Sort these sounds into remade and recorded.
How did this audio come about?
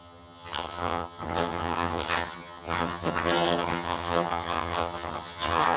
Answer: remade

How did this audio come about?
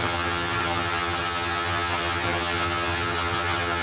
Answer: remade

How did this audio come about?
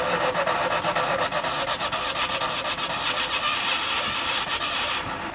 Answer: recorded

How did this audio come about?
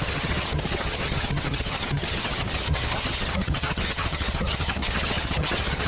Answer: remade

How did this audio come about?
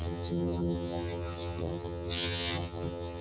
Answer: remade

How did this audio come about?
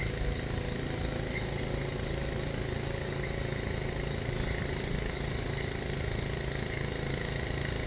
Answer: recorded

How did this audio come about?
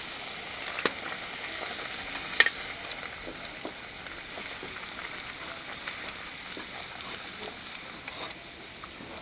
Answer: recorded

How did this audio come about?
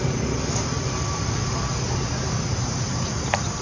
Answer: recorded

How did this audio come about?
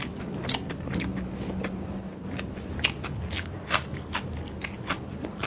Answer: recorded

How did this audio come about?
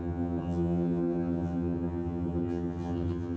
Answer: remade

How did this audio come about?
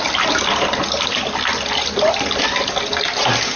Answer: recorded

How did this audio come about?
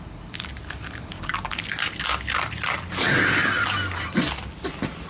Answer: recorded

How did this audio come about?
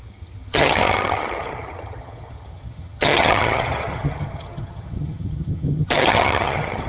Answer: remade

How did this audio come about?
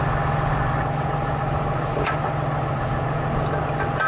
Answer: recorded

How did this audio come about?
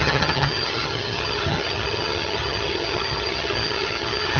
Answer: remade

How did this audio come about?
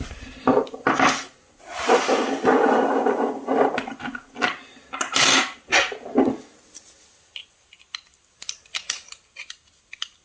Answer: recorded